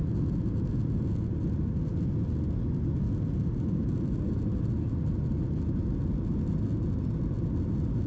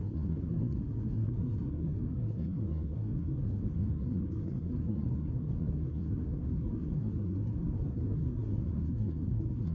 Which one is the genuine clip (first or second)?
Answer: first